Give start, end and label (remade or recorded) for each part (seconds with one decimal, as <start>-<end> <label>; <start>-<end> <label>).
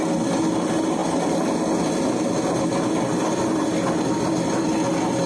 0.0-5.3 recorded